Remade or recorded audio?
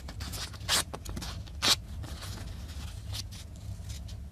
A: recorded